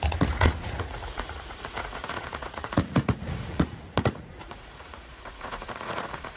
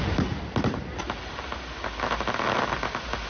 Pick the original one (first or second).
second